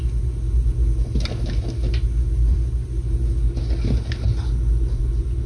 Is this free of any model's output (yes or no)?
yes